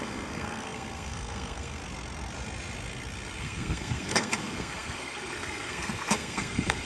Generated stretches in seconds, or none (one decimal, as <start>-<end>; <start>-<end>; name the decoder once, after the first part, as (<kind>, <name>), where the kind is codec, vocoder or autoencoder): 0.0-1.8 (codec, SNAC); 3.4-6.9